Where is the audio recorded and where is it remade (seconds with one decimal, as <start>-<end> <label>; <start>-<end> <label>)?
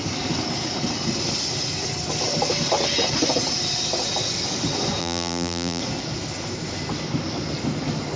0.0-5.0 recorded; 5.0-5.8 remade; 5.8-8.2 recorded